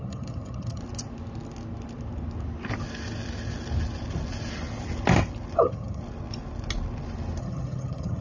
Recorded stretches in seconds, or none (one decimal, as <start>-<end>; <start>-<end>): 0.8-5.6; 6.0-7.4